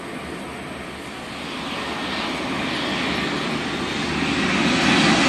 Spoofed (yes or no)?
no